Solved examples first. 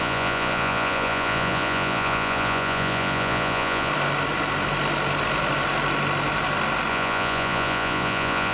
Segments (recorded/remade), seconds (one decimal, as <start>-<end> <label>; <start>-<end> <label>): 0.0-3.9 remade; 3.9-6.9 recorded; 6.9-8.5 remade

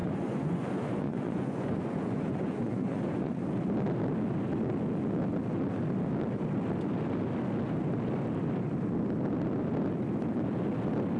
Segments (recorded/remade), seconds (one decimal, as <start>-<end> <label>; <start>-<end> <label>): 0.0-3.4 remade; 3.4-11.2 recorded

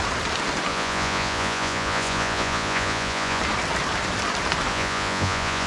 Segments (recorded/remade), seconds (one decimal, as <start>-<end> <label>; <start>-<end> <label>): 0.0-0.7 recorded; 0.7-3.4 remade; 3.4-4.7 recorded; 4.7-5.7 remade